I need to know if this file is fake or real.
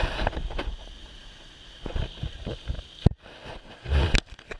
real